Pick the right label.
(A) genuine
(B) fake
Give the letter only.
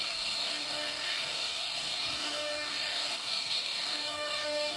B